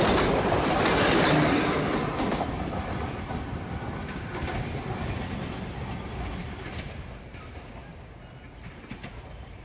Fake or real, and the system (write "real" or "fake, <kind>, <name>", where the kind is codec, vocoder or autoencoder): real